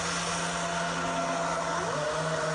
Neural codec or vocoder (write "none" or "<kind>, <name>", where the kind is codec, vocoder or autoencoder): none